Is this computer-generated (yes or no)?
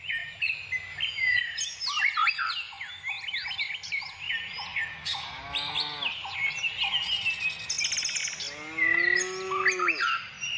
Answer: no